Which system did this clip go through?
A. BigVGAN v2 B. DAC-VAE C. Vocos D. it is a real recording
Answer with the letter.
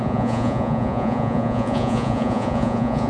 C